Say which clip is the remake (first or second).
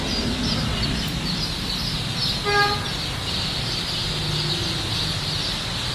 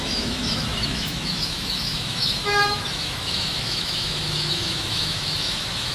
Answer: second